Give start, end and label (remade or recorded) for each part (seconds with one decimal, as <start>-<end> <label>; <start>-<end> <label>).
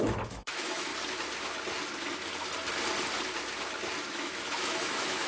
0.0-0.9 remade; 0.9-4.1 recorded; 4.1-5.3 remade